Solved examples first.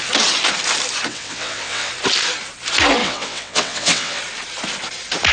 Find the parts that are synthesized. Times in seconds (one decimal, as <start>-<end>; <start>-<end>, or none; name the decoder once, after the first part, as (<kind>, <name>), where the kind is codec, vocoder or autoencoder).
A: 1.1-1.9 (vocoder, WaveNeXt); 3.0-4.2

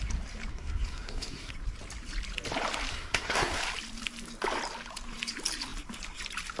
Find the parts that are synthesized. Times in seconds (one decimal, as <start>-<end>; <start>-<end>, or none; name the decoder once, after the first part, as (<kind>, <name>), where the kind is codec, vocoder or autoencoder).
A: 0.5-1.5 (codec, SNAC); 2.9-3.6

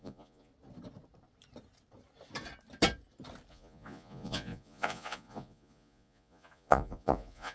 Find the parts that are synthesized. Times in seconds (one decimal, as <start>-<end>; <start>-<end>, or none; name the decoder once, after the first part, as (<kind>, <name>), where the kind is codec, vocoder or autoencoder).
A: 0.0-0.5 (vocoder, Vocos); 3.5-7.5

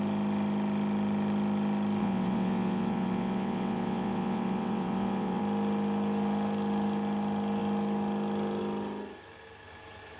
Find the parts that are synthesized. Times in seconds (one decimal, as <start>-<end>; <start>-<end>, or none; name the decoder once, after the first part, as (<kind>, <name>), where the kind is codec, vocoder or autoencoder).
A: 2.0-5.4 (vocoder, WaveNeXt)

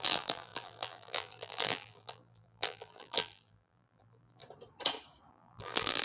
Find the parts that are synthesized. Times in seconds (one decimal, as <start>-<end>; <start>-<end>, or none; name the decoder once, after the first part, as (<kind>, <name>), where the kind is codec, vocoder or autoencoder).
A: 0.0-4.4 (vocoder, BigVGAN v2); 5.3-6.0

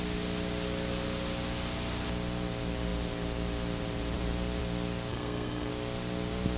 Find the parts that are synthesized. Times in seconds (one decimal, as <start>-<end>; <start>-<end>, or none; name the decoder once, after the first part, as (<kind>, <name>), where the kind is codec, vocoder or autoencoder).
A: 5.1-5.7 (codec, SNAC)